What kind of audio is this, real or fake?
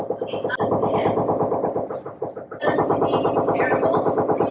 real